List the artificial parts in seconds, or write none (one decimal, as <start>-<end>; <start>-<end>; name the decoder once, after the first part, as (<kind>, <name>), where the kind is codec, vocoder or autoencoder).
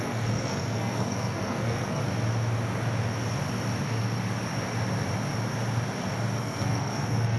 0.0-2.0 (codec, SNAC); 6.4-7.4